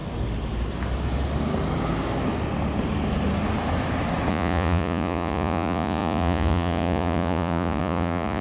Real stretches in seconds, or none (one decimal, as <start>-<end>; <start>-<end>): 0.0-4.3